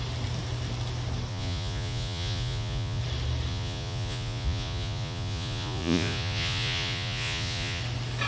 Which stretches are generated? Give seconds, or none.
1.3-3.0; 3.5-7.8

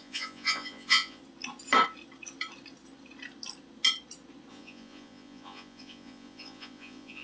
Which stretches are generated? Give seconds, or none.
0.0-1.2; 4.5-7.2

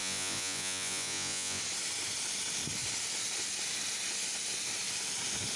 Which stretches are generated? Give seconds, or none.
0.0-1.6

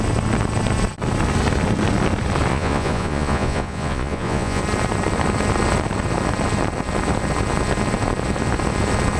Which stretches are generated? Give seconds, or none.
2.5-4.6

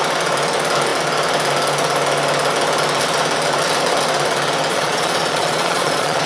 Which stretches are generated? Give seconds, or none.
4.7-6.3

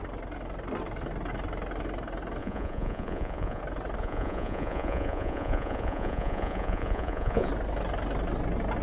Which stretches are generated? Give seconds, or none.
2.4-3.6; 4.0-7.5